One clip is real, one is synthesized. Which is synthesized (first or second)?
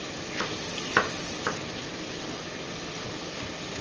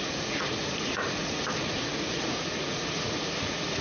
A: second